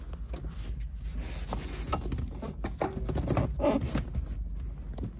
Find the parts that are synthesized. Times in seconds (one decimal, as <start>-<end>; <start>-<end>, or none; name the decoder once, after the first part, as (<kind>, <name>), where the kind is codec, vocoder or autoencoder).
none